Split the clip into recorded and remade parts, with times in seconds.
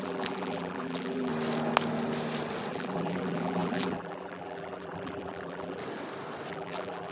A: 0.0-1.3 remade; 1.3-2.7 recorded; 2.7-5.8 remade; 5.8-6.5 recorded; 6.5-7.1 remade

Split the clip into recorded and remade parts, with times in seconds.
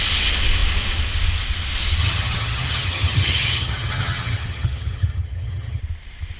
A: 0.0-2.0 recorded; 2.0-5.8 remade; 5.8-6.4 recorded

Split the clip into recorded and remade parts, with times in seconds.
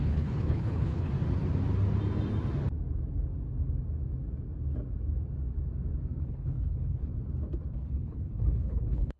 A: 0.0-1.1 remade; 1.1-6.2 recorded; 6.2-7.1 remade; 7.1-7.7 recorded; 7.7-9.2 remade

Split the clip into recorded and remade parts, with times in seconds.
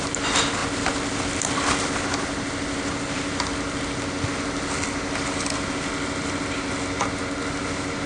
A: 0.0-8.1 recorded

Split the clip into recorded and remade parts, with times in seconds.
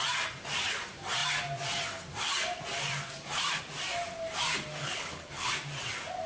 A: 0.0-4.8 recorded; 4.8-5.5 remade; 5.5-6.3 recorded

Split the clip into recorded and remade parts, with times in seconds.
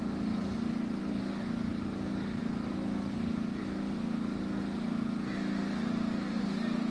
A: 0.0-6.9 recorded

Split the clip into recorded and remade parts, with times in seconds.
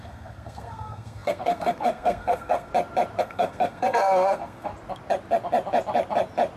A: 0.0-2.7 remade; 2.7-3.2 recorded; 3.2-4.7 remade; 4.7-6.6 recorded